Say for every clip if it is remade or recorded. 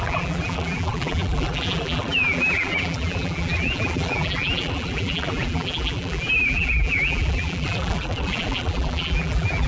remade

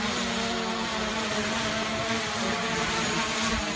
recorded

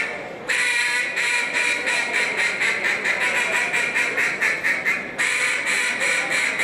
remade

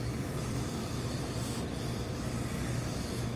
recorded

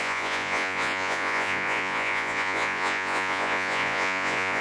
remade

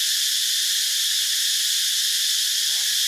remade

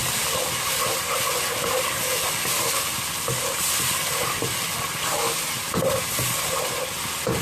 recorded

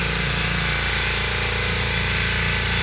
recorded